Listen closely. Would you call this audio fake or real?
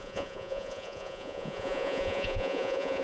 fake